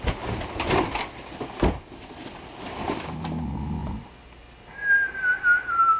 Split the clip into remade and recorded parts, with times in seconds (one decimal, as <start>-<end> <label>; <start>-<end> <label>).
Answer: 0.0-6.0 recorded